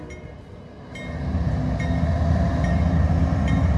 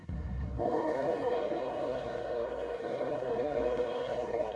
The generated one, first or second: second